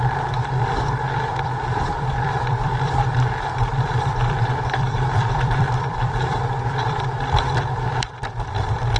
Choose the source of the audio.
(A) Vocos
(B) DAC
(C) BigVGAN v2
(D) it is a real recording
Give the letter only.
C